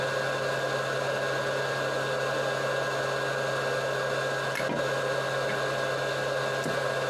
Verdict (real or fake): real